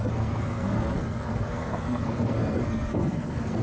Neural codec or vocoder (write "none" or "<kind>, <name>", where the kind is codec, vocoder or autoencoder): codec, SNAC